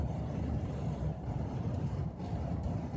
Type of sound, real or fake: real